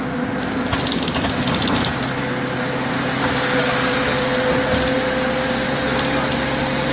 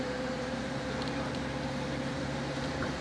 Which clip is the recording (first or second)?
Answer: first